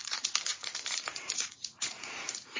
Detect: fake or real fake